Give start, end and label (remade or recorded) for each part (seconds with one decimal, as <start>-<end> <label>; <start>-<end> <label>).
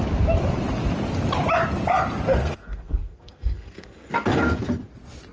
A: 0.0-2.4 recorded; 2.4-4.1 remade; 4.1-5.3 recorded